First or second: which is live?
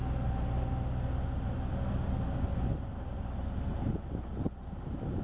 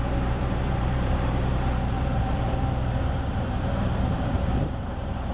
first